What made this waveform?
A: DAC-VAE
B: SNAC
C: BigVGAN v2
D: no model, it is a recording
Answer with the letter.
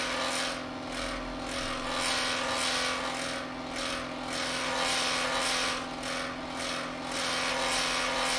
D